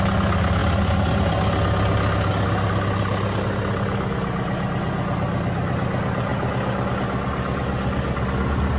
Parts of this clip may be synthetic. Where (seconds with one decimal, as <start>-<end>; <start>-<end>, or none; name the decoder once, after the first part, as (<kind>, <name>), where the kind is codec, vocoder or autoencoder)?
none